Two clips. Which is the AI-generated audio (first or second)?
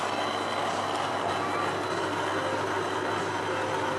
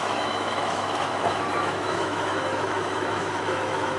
second